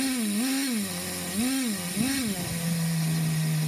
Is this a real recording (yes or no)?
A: yes